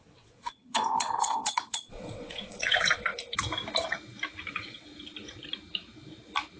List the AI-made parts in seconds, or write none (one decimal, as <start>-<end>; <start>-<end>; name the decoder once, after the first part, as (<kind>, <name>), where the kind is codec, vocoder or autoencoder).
0.0-3.1 (vocoder, WaveNeXt); 4.5-4.9